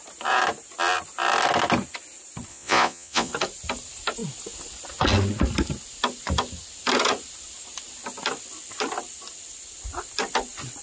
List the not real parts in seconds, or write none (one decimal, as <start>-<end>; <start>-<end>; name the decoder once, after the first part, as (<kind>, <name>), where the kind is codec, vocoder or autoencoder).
2.5-3.3 (vocoder, Vocos)

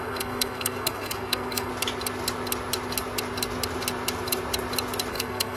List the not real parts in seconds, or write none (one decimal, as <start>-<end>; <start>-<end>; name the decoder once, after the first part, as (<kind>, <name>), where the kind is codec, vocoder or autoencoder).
0.0-1.7 (codec, SNAC); 5.1-5.6